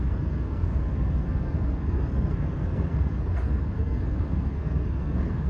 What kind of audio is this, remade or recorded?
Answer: remade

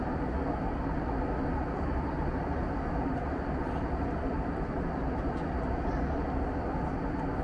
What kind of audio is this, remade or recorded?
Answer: recorded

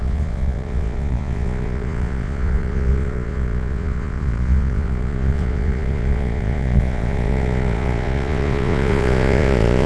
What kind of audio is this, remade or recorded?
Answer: remade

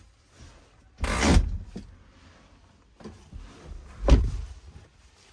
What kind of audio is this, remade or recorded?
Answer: recorded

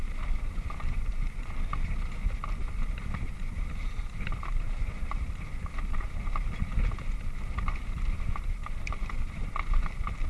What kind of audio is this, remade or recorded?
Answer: recorded